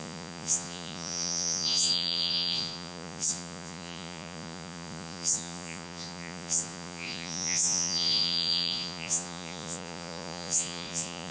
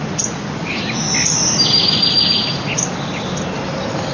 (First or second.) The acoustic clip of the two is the second